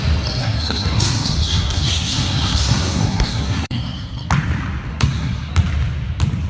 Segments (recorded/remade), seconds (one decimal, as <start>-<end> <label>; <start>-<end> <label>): 0.0-0.4 recorded; 0.4-4.3 remade; 4.3-4.9 recorded; 4.9-5.5 remade; 5.5-6.5 recorded